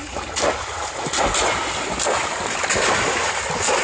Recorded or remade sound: recorded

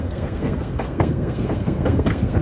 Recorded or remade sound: remade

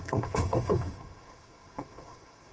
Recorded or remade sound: remade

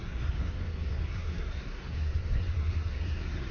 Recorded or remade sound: remade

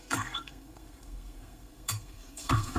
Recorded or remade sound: remade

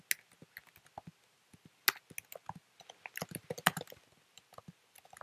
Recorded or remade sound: recorded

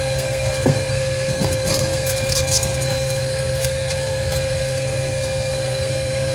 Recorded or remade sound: remade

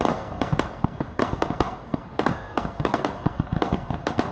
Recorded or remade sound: remade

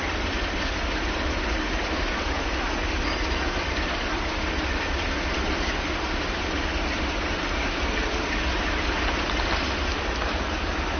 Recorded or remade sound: recorded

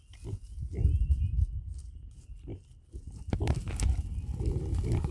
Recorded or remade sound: recorded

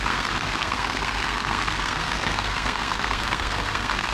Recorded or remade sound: remade